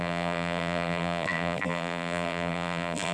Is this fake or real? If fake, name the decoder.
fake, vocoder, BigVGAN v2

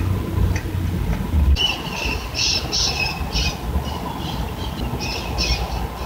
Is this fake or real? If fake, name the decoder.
real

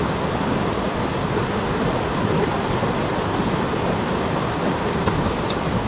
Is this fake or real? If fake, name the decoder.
real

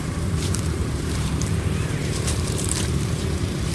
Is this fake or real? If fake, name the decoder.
fake, vocoder, BigVGAN v2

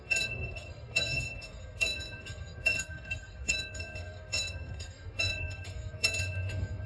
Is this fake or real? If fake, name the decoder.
fake, codec, SNAC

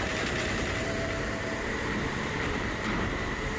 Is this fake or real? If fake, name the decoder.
fake, vocoder, BigVGAN v2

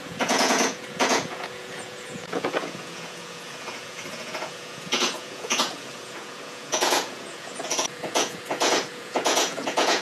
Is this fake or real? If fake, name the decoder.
fake, vocoder, Vocos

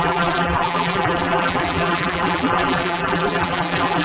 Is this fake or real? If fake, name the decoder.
fake, vocoder, BigVGAN v2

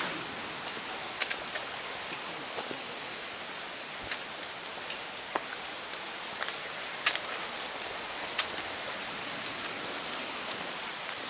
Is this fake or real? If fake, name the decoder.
real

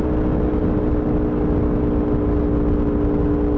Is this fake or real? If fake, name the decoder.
real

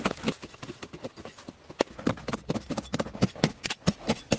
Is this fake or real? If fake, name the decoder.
real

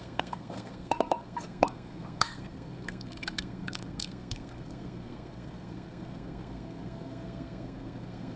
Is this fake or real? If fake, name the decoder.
fake, codec, SNAC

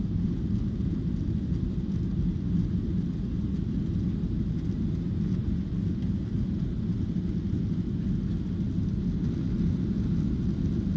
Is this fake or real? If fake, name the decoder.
real